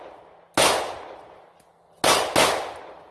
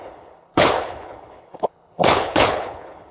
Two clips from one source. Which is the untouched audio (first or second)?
first